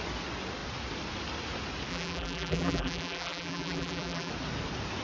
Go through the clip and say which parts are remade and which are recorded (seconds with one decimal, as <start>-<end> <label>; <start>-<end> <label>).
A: 0.0-1.9 recorded; 1.9-4.3 remade; 4.3-5.0 recorded